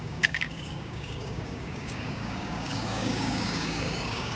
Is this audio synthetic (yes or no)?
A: yes